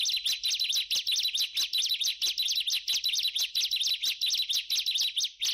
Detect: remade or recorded recorded